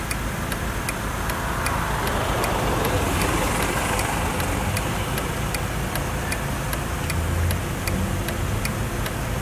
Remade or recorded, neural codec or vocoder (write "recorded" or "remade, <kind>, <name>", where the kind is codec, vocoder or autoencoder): recorded